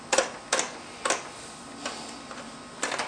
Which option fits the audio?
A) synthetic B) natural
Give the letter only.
B